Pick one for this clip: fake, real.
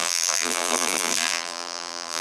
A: fake